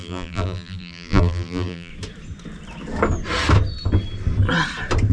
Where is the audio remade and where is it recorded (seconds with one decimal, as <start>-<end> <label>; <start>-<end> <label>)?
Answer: 0.0-1.9 remade; 1.9-5.1 recorded